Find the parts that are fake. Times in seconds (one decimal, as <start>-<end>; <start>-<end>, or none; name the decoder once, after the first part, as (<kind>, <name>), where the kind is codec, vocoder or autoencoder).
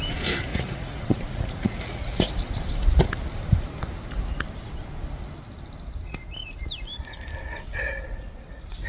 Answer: 0.5-2.3 (vocoder, Vocos)